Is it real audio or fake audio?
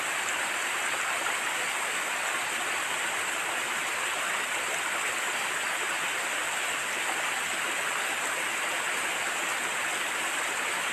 real